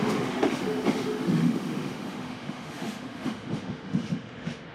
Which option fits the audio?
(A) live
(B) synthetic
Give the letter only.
B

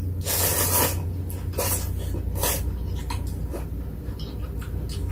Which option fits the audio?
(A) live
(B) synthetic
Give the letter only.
A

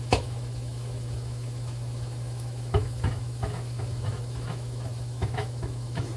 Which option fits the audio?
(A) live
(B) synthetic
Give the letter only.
B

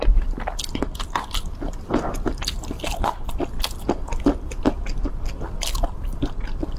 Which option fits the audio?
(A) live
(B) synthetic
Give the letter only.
A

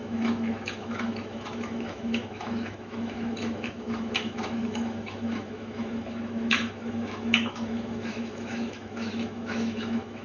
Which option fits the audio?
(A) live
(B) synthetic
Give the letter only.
B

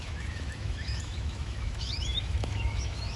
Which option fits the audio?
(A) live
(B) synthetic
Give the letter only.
B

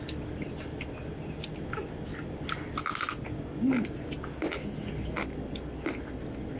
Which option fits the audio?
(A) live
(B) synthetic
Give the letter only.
A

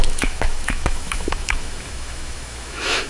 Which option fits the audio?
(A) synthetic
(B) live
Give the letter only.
A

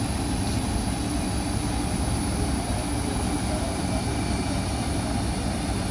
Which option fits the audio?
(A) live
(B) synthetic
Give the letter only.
A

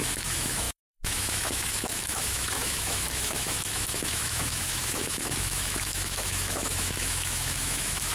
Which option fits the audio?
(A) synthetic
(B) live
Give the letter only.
A